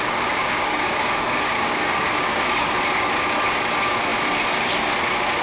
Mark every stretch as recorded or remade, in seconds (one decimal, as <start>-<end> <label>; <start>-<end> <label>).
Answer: 0.0-0.4 recorded; 0.4-2.7 remade; 2.7-5.4 recorded